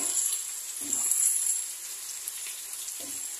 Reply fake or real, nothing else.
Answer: real